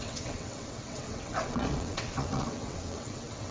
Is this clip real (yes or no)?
no